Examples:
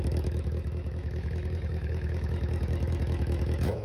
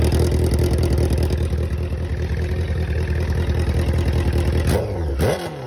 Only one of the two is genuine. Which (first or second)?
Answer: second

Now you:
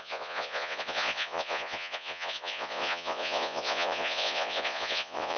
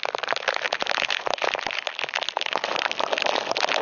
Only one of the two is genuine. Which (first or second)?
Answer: second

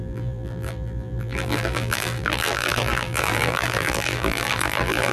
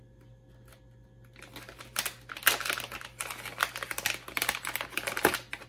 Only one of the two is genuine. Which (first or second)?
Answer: second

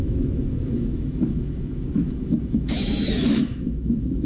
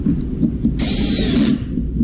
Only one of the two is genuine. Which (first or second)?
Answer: second